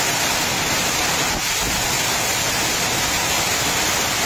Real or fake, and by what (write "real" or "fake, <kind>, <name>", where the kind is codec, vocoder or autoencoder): real